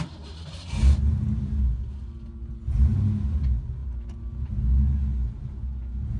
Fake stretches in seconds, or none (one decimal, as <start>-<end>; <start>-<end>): none